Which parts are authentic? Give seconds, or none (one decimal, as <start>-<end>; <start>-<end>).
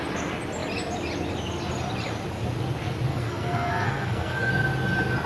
0.0-3.1; 4.5-5.3